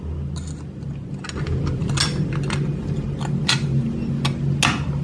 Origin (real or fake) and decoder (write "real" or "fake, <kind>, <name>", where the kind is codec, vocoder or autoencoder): real